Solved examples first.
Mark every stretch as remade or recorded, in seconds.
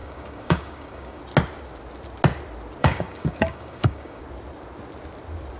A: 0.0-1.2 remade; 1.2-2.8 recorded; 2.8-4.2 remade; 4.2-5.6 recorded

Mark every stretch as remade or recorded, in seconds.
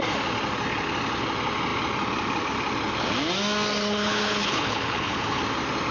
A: 0.0-3.8 recorded; 3.8-5.4 remade; 5.4-5.9 recorded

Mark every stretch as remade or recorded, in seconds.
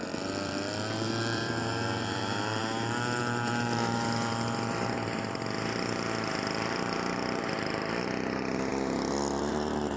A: 0.0-2.6 remade; 2.6-3.2 recorded; 3.2-8.7 remade; 8.7-9.5 recorded; 9.5-10.0 remade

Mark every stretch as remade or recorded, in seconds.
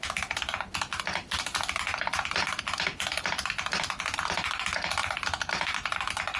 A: 0.0-2.9 recorded; 2.9-4.1 remade; 4.1-6.4 recorded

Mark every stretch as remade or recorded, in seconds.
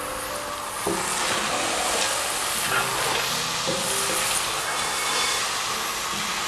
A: 0.0-4.6 recorded; 4.6-5.4 remade; 5.4-6.5 recorded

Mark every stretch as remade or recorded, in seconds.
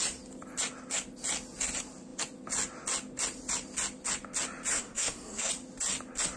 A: 0.0-4.7 recorded; 4.7-5.5 remade; 5.5-6.4 recorded